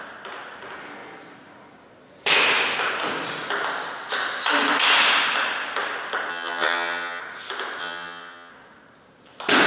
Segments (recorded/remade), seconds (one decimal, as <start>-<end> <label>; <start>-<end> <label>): 0.0-6.3 recorded; 6.3-7.2 remade; 7.2-7.8 recorded; 7.8-8.5 remade; 8.5-9.7 recorded

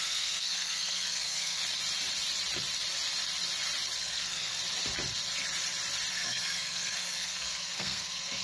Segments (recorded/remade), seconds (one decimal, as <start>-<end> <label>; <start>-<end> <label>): 0.0-1.6 remade; 1.6-4.0 recorded; 4.0-4.6 remade; 4.6-6.1 recorded; 6.1-8.4 remade

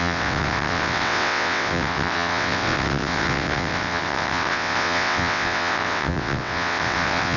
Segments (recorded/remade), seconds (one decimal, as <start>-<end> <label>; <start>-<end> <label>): 0.0-7.4 remade

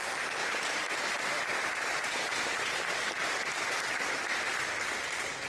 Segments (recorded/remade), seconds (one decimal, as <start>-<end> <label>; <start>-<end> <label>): 0.0-0.4 recorded; 0.4-3.7 remade; 3.7-5.5 recorded

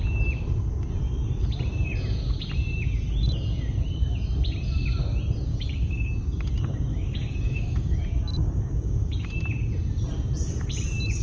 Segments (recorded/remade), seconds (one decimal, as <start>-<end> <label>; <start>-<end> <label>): 0.0-5.5 recorded; 5.5-6.1 remade; 6.1-6.9 recorded; 6.9-8.0 remade; 8.0-8.4 recorded; 8.4-9.3 remade; 9.3-11.2 recorded

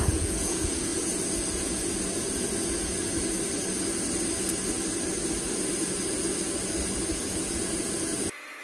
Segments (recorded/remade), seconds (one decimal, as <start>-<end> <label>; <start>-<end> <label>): 0.0-2.9 remade; 2.9-7.1 recorded; 7.1-8.6 remade

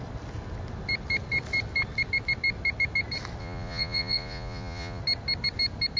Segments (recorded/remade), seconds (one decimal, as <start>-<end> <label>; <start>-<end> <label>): 0.0-3.4 recorded; 3.4-5.0 remade; 5.0-6.0 recorded

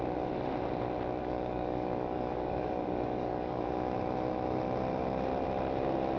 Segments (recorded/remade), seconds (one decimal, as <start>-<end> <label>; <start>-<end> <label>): 0.0-1.2 recorded; 1.2-3.6 remade; 3.6-6.2 recorded